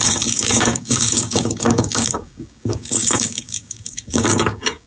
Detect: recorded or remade remade